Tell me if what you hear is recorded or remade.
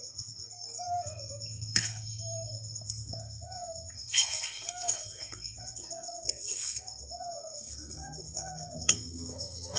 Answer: remade